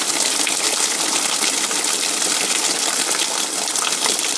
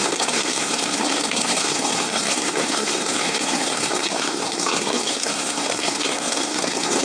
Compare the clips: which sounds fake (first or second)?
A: second